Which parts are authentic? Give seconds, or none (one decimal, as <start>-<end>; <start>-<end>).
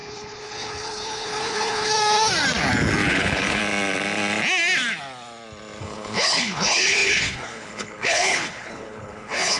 1.9-3.1; 3.6-5.8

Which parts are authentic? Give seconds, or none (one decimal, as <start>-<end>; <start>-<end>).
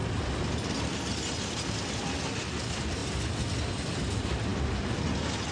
0.0-5.5